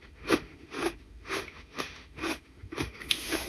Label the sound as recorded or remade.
remade